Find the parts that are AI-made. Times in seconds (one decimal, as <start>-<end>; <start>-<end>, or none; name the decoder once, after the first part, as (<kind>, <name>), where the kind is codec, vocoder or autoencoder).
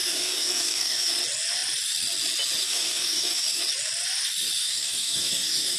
0.0-1.1 (codec, DAC); 2.6-3.6; 4.6-5.8